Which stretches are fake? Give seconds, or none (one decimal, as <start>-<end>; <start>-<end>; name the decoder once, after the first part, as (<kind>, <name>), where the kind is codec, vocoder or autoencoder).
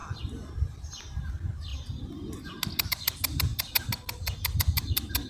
none